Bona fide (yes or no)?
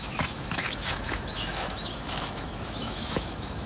no